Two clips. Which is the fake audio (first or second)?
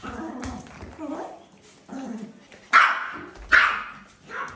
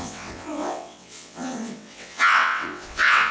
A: second